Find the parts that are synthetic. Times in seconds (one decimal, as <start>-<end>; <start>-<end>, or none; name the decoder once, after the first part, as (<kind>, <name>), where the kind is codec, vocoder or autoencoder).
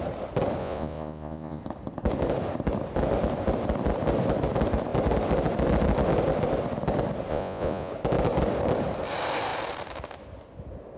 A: 0.6-1.6 (vocoder, Vocos); 7.3-7.9